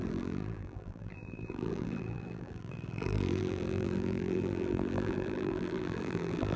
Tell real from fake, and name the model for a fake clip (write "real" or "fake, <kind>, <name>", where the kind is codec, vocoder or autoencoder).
fake, vocoder, BigVGAN v2